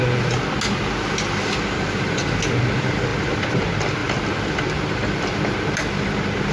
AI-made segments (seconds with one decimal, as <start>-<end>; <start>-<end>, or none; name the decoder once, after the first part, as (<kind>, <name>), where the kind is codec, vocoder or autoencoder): 3.1-3.6 (vocoder, BigVGAN v2); 4.0-4.6